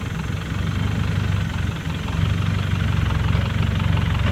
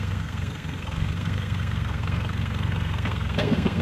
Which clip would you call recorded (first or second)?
first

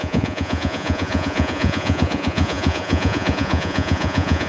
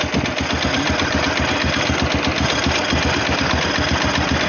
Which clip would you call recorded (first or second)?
second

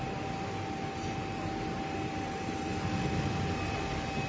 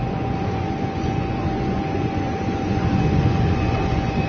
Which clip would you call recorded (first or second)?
first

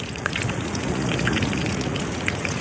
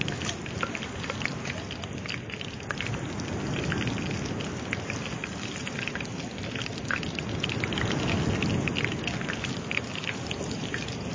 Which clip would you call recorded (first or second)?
second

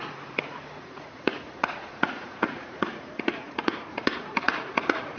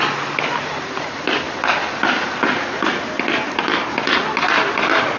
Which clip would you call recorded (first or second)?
second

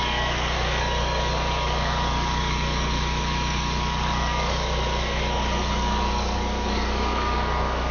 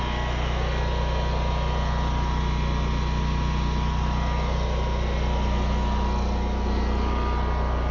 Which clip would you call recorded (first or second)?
second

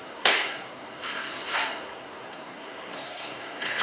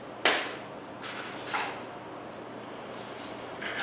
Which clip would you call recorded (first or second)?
second